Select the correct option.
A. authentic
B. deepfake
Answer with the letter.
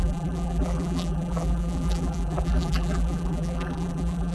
B